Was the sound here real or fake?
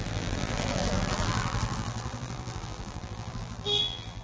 fake